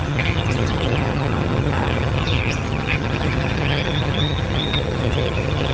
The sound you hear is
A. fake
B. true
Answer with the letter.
A